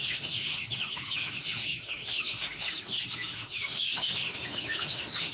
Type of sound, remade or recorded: remade